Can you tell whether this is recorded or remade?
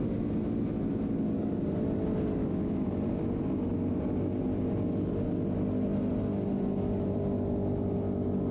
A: recorded